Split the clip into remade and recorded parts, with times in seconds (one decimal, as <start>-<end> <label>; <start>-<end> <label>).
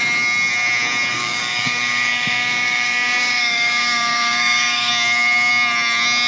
0.0-1.1 recorded; 1.1-4.9 remade; 4.9-6.3 recorded